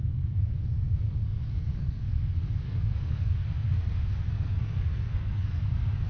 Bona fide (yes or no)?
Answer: no